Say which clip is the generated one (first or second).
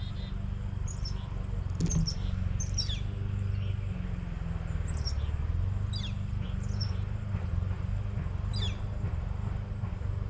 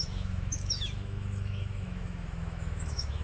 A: second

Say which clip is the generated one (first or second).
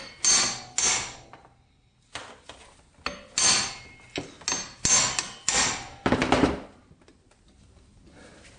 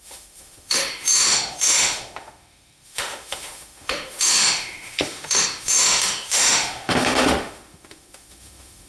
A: second